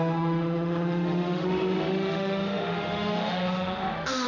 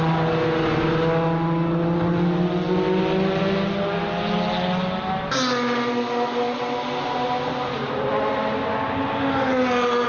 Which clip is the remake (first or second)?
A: first